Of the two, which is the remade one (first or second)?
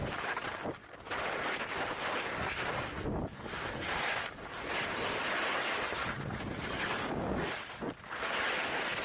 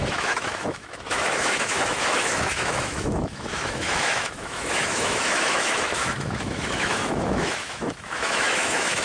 second